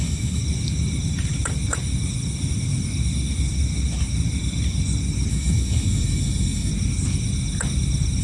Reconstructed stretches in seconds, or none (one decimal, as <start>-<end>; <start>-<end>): 0.0-0.4; 5.3-6.7